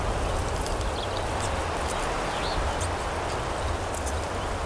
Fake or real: real